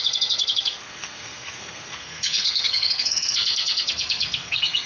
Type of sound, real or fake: fake